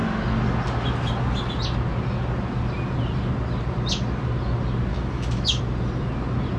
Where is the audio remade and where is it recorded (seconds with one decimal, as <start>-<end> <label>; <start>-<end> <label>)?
0.0-4.9 recorded; 4.9-5.6 remade; 5.6-6.6 recorded

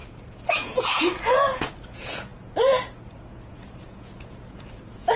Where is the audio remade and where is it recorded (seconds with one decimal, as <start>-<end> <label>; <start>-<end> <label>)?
0.0-5.2 remade

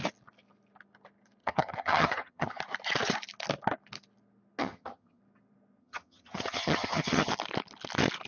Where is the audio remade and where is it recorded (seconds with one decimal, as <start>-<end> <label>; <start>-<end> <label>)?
0.0-1.4 recorded; 1.4-2.6 remade; 2.6-4.6 recorded; 4.6-5.2 remade; 5.2-5.8 recorded; 5.8-7.3 remade; 7.3-8.3 recorded

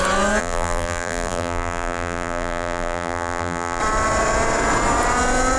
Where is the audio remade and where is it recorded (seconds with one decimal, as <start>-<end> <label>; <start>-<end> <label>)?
0.0-0.4 recorded; 0.4-3.8 remade; 3.8-5.6 recorded

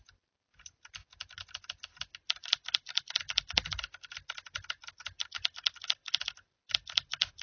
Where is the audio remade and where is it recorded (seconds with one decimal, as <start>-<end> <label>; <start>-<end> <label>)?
0.0-7.4 recorded